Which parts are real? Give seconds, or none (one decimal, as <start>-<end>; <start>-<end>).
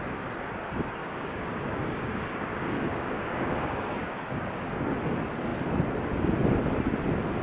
0.0-1.0; 4.7-7.4